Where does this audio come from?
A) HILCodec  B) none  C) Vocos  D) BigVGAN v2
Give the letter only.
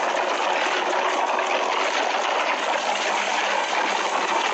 B